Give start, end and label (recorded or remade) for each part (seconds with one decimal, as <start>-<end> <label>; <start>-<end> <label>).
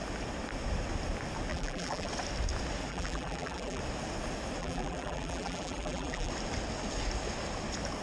0.0-1.5 recorded; 1.5-2.1 remade; 2.1-2.9 recorded; 2.9-3.8 remade; 3.8-4.6 recorded; 4.6-6.3 remade; 6.3-8.0 recorded